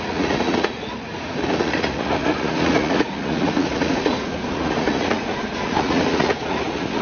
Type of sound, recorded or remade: remade